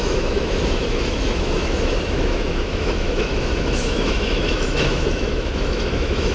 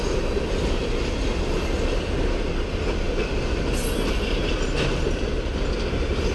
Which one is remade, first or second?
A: first